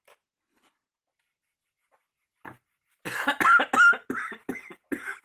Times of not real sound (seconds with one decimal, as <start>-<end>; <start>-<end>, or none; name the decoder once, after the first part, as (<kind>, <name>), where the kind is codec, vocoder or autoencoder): none